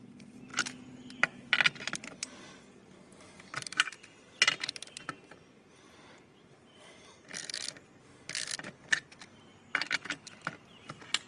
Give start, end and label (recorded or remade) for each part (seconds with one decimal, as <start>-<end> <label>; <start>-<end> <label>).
0.0-11.3 recorded